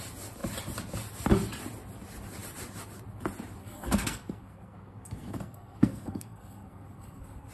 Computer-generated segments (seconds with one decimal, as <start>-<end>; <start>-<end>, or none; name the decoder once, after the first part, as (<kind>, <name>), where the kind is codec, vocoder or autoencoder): 3.6-7.5 (codec, SNAC)